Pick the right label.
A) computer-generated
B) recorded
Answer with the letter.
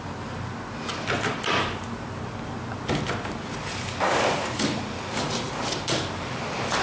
B